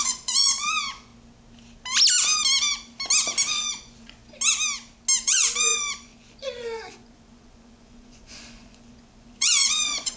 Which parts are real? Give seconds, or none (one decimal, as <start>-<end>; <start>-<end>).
1.1-3.5; 4.2-5.2